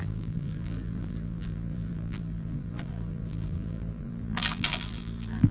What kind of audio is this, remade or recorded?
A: remade